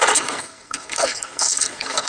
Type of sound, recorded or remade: remade